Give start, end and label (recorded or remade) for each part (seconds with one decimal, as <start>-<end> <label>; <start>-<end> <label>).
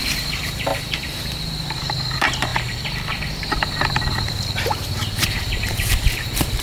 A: 0.0-6.6 remade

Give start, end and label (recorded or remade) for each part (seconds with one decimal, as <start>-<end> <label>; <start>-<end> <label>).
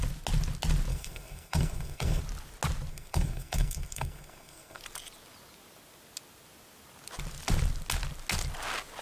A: 0.0-0.9 recorded; 0.9-2.2 remade; 2.2-2.9 recorded; 2.9-4.8 remade; 4.8-9.0 recorded